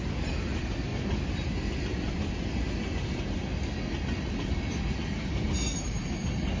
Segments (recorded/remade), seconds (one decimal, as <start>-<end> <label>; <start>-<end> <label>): 0.0-6.6 recorded